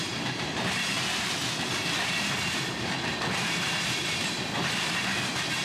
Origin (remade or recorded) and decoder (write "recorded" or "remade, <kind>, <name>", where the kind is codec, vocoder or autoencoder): remade, vocoder, BigVGAN v2